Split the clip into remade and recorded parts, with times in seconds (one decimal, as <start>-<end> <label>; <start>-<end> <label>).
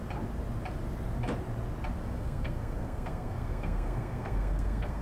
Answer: 0.0-2.0 recorded; 2.0-5.0 remade